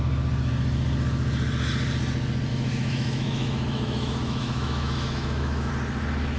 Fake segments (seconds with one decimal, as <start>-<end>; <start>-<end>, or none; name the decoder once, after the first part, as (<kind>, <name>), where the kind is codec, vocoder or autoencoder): 2.5-5.7 (autoencoder, DAC-VAE)